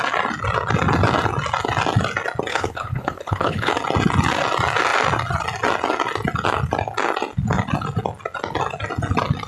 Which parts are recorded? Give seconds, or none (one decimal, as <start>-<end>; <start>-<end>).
0.0-2.5; 3.7-9.5